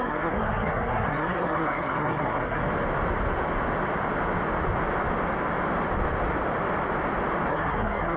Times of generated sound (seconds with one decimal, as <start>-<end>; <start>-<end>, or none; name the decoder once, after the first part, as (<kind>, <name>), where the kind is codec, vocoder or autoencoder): 0.0-2.6 (codec, SNAC); 7.5-8.2